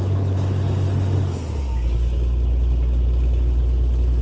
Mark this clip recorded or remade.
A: recorded